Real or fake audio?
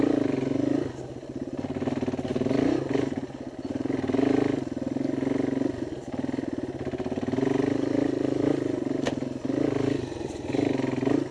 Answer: real